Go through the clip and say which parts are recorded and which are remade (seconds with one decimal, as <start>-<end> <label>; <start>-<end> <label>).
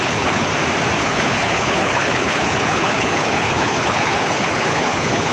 0.0-0.5 remade; 0.5-1.0 recorded; 1.0-5.3 remade